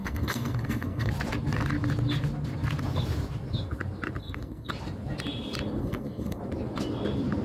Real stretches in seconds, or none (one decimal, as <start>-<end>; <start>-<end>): 1.1-4.2; 4.7-5.8; 6.4-7.4

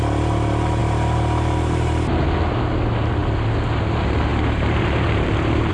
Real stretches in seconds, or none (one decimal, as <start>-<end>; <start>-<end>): 0.0-0.8; 2.2-4.3

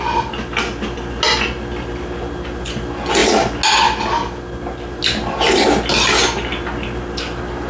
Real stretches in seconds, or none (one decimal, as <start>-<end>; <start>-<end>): 0.0-7.7

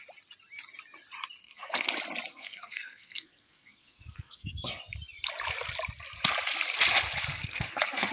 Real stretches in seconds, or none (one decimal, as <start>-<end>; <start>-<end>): 0.0-1.4; 1.9-2.3; 4.8-7.3

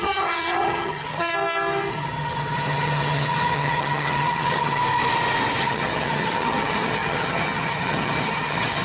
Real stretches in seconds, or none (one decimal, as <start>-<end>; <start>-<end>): 1.3-1.9; 4.8-5.6

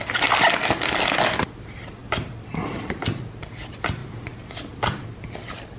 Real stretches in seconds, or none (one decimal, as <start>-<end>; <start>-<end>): 0.0-5.8

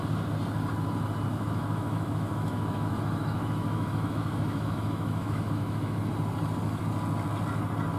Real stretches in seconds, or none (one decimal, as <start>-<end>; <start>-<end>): 0.0-1.3; 6.0-8.0

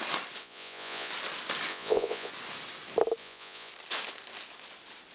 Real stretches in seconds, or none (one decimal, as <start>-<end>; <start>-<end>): 0.0-0.4; 1.1-1.7; 2.3-3.2; 3.7-5.1